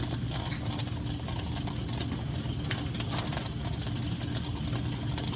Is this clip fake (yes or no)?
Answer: no